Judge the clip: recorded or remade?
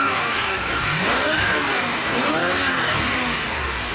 remade